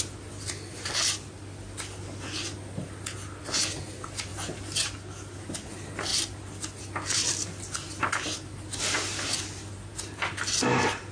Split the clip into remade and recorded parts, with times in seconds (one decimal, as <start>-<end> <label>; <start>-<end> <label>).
0.0-11.1 recorded